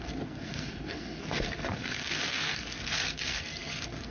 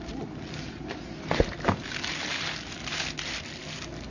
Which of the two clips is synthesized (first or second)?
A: first